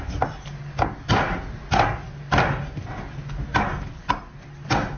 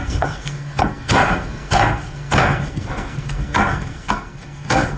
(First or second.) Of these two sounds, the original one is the first